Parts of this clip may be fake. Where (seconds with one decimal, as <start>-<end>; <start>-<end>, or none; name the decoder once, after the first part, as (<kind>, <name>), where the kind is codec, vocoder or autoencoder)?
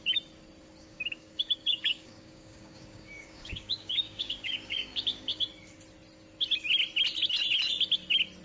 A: 0.8-5.5 (codec, DAC)